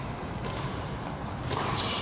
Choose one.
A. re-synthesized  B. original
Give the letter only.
B